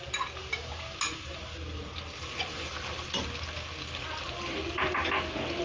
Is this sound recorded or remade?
recorded